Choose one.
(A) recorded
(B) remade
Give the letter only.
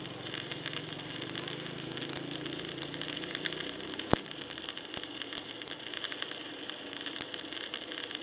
B